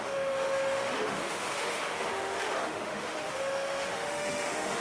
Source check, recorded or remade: remade